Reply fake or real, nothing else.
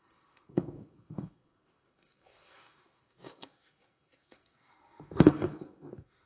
fake